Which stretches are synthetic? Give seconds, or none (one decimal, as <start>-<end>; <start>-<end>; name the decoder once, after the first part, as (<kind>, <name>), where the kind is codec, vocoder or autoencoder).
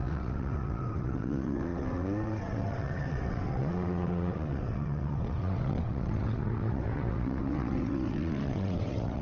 0.0-9.2 (vocoder, WaveNeXt)